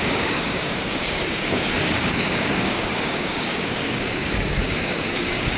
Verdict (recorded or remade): remade